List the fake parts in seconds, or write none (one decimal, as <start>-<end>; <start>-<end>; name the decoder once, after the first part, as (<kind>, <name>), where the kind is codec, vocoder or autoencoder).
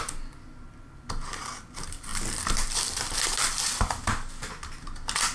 none